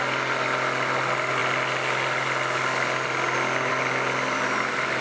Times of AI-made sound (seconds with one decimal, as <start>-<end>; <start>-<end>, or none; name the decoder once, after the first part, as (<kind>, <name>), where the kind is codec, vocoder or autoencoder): none